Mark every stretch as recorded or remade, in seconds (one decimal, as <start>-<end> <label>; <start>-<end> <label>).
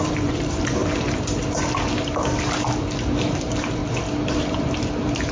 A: 0.0-0.8 remade; 0.8-1.9 recorded; 1.9-3.8 remade; 3.8-4.4 recorded; 4.4-5.3 remade